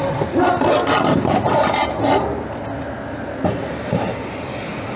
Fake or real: real